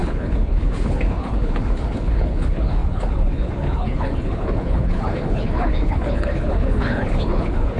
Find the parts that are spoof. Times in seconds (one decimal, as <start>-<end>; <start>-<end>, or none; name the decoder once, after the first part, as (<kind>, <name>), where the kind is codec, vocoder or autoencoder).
0.0-7.8 (codec, HILCodec)